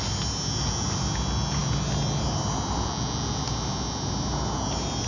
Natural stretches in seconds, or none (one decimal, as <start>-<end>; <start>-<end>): 0.0-5.1